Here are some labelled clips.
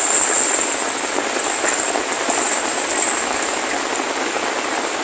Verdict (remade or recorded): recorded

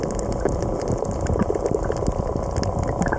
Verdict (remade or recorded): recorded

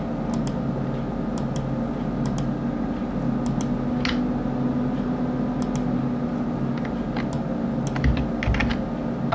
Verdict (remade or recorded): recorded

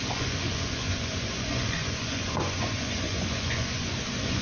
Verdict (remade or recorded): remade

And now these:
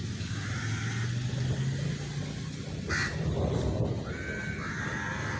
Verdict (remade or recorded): recorded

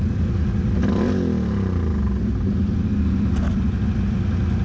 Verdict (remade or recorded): recorded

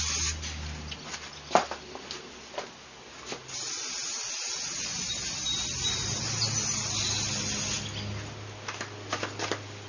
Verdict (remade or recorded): recorded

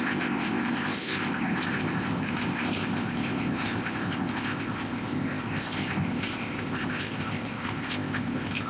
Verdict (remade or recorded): remade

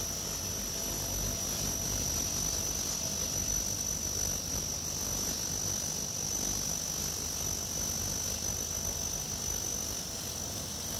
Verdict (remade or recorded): recorded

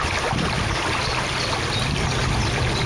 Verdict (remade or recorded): recorded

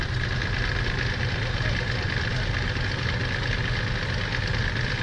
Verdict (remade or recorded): recorded